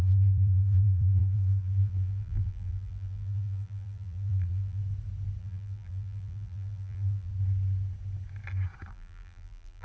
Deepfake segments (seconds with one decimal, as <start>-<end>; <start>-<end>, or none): 0.0-4.8; 5.4-7.3; 8.9-9.8